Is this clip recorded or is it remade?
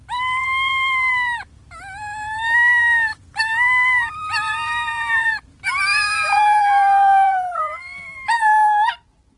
remade